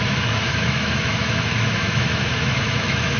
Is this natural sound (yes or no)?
no